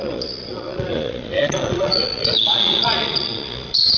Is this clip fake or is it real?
fake